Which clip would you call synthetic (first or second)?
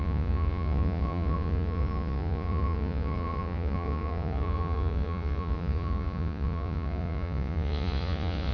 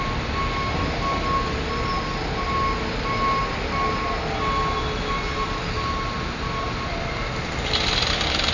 first